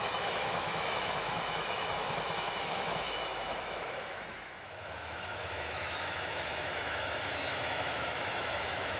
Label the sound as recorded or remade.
remade